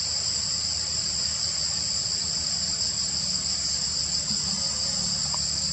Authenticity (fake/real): fake